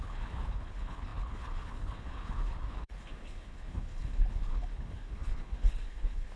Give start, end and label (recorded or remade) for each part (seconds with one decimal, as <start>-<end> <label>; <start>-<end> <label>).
0.0-6.4 remade